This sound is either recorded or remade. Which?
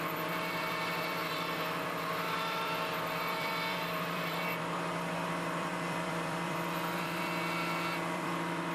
remade